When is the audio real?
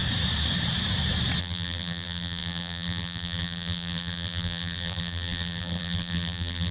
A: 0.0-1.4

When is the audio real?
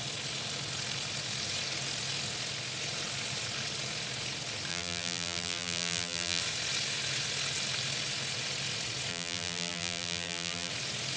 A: 0.0-4.7; 6.4-9.1; 10.7-11.2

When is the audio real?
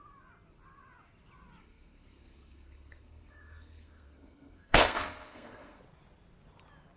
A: 0.0-1.6; 5.8-7.0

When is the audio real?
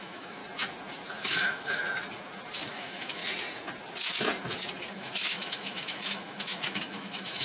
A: 0.4-1.2; 1.8-2.7; 3.2-4.9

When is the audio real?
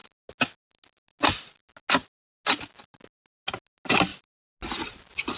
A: 0.0-5.4